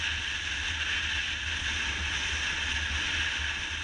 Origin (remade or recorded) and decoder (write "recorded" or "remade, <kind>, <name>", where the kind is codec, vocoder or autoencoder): recorded